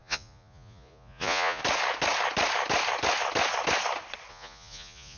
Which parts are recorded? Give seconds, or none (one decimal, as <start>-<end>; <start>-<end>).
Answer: 1.6-4.3